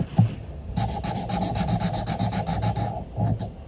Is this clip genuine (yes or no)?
yes